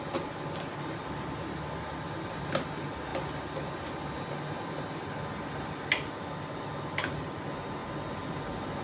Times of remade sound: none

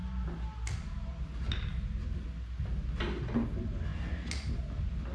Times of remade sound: none

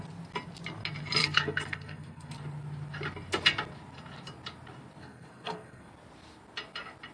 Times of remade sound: 1.2-2.3 (codec, SNAC); 5.0-5.9

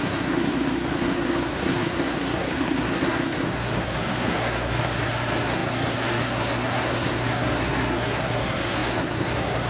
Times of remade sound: 0.0-9.7 (codec, SNAC)

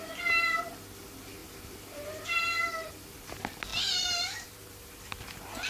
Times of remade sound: 1.4-2.9 (vocoder, BigVGAN v2); 3.7-4.9

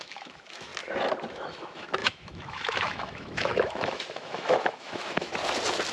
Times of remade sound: 0.0-0.7 (autoencoder, DAC-VAE); 1.3-5.3

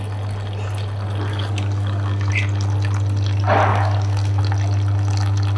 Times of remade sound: 1.3-2.3 (codec, DAC); 3.7-4.4

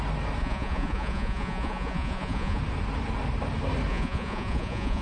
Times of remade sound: 0.4-2.6 (vocoder, Vocos); 3.9-5.0